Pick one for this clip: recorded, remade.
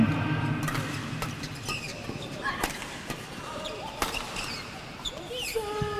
recorded